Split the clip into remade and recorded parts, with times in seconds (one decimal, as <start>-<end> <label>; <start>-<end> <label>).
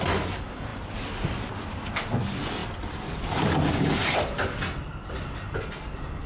0.0-6.3 recorded